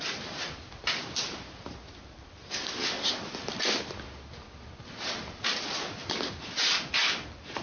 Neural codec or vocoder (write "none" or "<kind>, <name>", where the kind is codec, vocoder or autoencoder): none